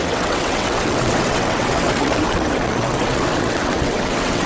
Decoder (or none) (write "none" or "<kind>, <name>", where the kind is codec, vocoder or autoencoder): vocoder, WaveNeXt